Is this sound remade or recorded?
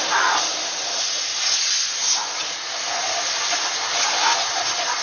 recorded